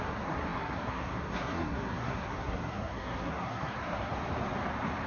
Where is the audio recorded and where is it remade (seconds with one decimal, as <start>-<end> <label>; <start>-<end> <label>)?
0.0-4.1 remade; 4.1-5.1 recorded

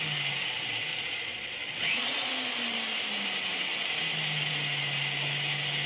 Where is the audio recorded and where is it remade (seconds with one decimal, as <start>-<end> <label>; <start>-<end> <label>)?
0.0-0.9 recorded; 0.9-2.3 remade; 2.3-5.9 recorded

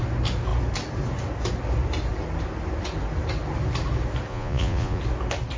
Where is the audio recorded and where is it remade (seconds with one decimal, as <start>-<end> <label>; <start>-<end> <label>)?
0.0-4.3 recorded; 4.3-5.0 remade; 5.0-5.6 recorded

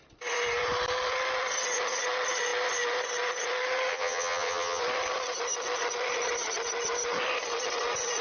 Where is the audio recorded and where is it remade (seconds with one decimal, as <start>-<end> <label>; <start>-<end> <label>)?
0.0-3.9 recorded; 3.9-4.8 remade; 4.8-8.2 recorded

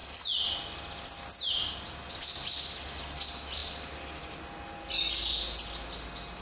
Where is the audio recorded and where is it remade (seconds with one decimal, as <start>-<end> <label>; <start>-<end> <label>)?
0.0-6.4 recorded

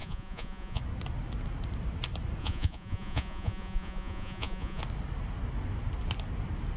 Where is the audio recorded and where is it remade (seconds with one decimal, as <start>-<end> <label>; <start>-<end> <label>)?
0.0-0.8 remade; 0.8-2.4 recorded; 2.4-4.8 remade; 4.8-6.8 recorded

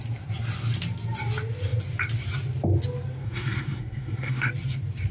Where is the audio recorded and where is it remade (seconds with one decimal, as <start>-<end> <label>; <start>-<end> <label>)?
0.0-3.2 recorded; 3.2-4.5 remade; 4.5-5.1 recorded